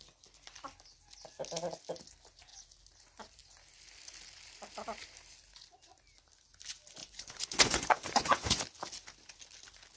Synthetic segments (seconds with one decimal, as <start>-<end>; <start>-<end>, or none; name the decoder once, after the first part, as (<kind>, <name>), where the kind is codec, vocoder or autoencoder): 7.0-8.6 (vocoder, Vocos)